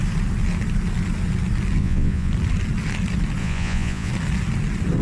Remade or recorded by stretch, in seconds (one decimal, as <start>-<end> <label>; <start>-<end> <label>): 0.0-1.8 recorded; 1.8-2.3 remade; 2.3-3.4 recorded; 3.4-4.1 remade; 4.1-5.0 recorded